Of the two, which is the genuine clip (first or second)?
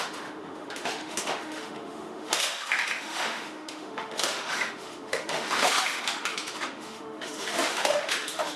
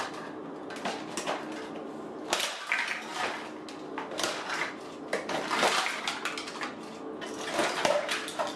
second